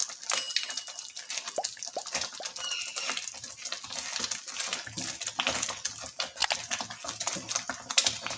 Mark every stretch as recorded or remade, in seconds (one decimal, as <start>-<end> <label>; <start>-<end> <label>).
0.0-8.4 recorded